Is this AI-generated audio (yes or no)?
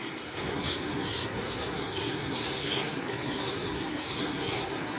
yes